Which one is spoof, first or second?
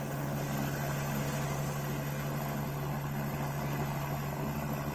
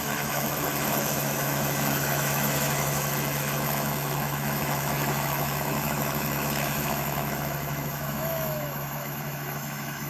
second